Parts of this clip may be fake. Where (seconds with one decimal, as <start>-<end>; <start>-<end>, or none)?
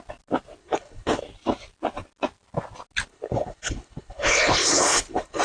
0.6-1.2; 3.1-5.4